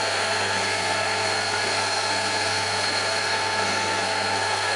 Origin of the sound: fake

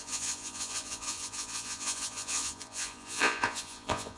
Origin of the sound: fake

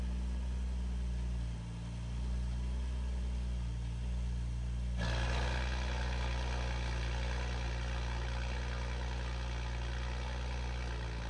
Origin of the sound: real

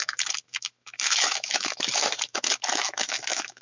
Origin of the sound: fake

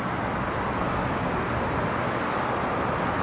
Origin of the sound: real